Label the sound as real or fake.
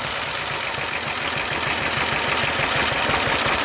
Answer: real